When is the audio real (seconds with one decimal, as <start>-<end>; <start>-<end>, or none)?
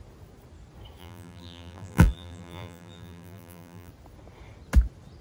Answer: 0.0-1.0; 3.9-5.2